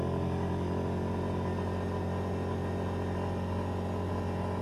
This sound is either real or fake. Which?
real